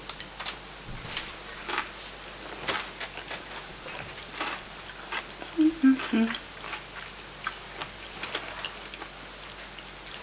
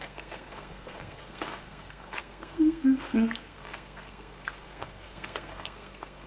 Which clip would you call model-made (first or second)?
second